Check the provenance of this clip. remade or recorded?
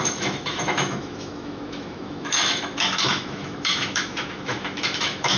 remade